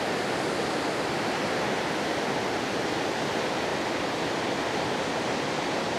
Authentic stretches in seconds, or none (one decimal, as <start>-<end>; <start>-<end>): 0.0-3.7; 4.5-6.0

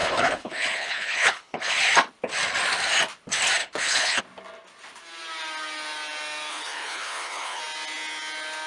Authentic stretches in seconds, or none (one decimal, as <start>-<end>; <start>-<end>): 1.8-3.6; 4.2-6.5; 7.6-8.7

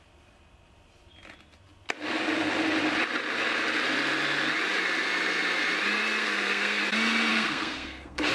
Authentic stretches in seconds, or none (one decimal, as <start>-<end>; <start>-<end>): 0.0-6.2; 6.8-7.3

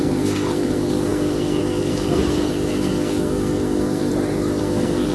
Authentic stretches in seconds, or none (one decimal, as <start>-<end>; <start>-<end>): 4.1-4.6

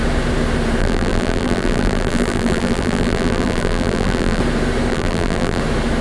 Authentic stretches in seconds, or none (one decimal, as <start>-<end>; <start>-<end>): 0.0-0.8; 4.4-4.9; 5.6-6.0

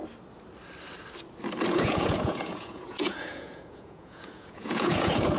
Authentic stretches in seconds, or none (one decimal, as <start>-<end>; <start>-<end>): 0.0-1.7

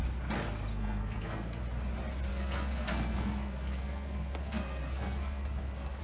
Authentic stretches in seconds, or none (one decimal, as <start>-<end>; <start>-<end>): 0.0-0.7; 1.6-2.3

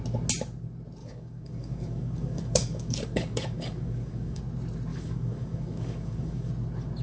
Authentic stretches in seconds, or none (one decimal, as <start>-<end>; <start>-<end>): 0.0-1.0; 4.4-4.9; 6.5-7.0